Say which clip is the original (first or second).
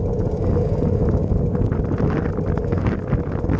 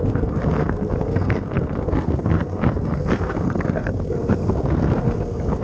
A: first